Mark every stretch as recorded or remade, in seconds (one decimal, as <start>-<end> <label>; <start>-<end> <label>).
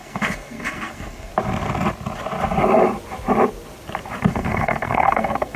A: 0.0-1.3 remade; 1.3-4.3 recorded; 4.3-5.6 remade